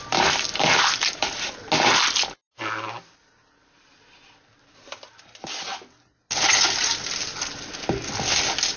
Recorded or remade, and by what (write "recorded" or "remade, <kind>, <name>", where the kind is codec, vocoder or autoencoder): recorded